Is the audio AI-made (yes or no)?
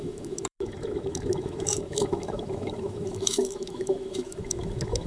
yes